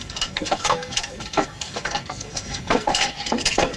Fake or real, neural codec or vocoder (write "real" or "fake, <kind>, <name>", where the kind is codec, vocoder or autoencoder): fake, codec, SNAC